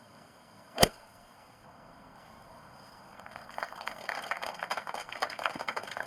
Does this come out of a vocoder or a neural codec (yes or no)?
yes